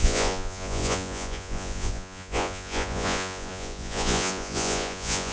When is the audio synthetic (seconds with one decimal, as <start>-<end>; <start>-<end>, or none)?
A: 0.0-5.3